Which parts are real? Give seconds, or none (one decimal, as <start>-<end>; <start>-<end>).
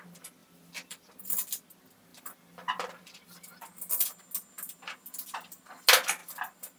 0.0-0.4; 1.2-2.1; 3.2-6.2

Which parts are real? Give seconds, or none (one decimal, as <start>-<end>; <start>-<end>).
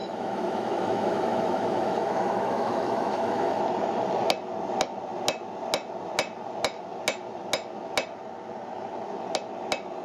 3.6-10.0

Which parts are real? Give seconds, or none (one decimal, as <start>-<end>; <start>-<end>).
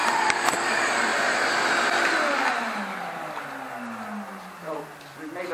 0.6-5.5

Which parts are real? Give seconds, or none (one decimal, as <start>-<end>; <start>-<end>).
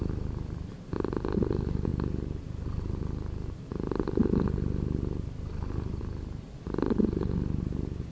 0.0-8.1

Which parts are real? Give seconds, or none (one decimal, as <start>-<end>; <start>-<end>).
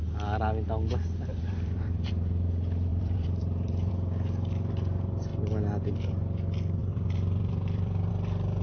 0.0-1.4; 2.1-2.9; 3.9-6.8; 8.1-8.6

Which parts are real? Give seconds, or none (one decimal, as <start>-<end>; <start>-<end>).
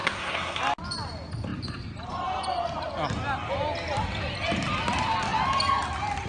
0.6-6.3